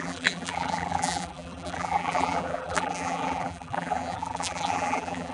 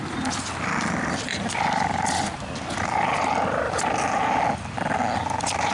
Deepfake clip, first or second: first